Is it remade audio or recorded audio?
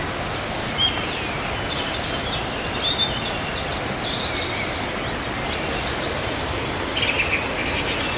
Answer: recorded